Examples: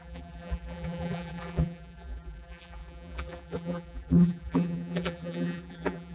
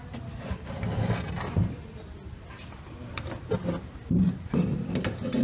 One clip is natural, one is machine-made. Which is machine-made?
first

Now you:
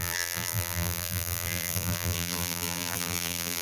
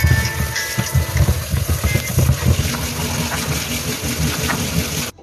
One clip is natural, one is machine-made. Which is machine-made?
first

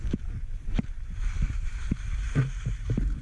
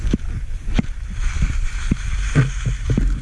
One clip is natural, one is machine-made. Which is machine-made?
first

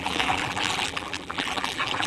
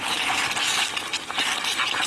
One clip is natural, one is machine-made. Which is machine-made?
first